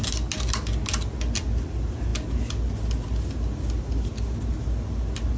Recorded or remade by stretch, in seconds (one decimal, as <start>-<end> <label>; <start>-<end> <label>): 0.0-5.4 recorded